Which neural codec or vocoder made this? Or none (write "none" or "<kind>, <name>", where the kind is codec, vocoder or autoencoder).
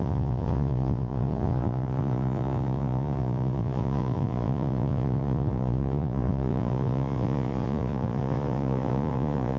vocoder, Vocos